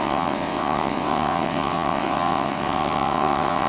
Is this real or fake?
fake